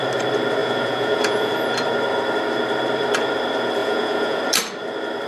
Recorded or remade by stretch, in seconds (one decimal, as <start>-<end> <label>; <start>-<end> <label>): 0.0-0.6 recorded; 0.6-1.5 remade; 1.5-3.8 recorded; 3.8-4.4 remade; 4.4-5.3 recorded